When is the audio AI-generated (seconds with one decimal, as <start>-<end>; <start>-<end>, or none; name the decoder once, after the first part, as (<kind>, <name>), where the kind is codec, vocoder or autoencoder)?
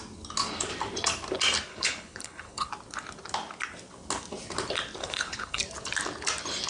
1.7-2.7 (codec, HILCodec); 5.0-5.6